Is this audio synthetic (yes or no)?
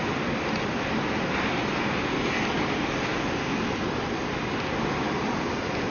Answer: no